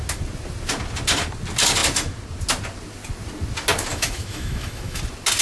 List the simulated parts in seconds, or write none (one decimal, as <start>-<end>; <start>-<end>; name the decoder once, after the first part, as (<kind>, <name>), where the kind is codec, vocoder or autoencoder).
3.9-5.0 (autoencoder, DAC-VAE)